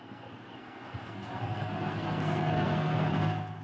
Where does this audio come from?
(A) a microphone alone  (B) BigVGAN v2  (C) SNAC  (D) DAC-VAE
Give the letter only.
C